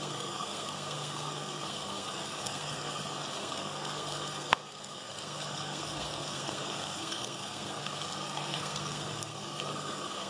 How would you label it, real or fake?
fake